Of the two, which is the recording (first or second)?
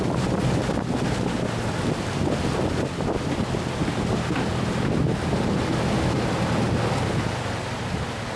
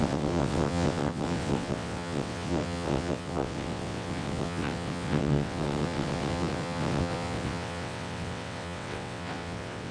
first